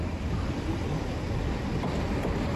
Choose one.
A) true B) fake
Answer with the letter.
B